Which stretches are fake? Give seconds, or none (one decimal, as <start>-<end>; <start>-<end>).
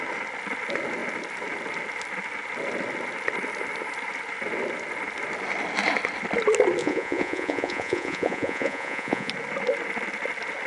6.8-9.3